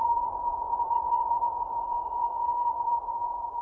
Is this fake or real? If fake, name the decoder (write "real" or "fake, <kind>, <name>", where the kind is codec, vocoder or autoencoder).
fake, vocoder, Vocos